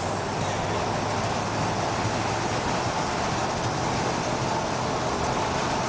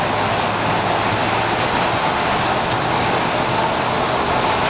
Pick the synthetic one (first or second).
first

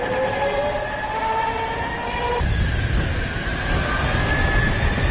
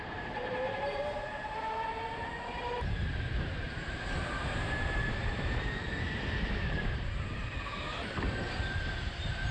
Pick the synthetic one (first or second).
second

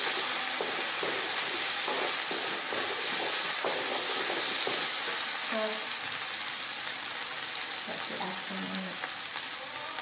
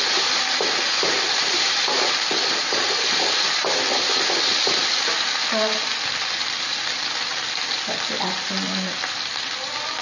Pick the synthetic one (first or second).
second